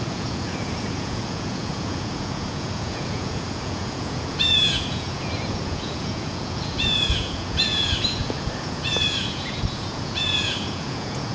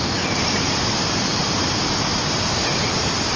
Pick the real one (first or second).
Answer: second